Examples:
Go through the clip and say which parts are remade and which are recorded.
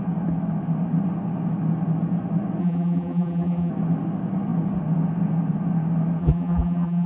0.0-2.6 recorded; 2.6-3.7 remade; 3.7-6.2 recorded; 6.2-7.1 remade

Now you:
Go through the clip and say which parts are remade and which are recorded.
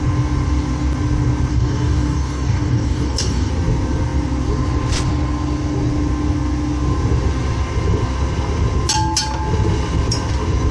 0.0-1.5 recorded; 1.5-3.5 remade; 3.5-10.7 recorded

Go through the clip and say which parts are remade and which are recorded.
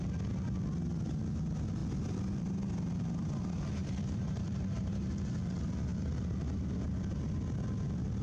0.0-3.8 recorded; 3.8-5.1 remade; 5.1-8.2 recorded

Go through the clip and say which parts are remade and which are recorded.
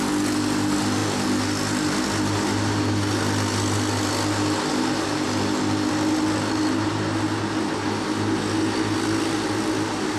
0.0-10.2 recorded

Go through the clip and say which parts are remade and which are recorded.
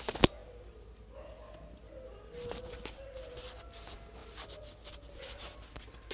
0.0-6.1 recorded